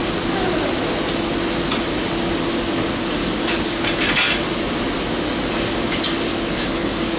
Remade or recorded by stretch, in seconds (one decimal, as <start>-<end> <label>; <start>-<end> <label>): 0.0-3.2 recorded; 3.2-3.8 remade; 3.8-6.3 recorded; 6.3-7.2 remade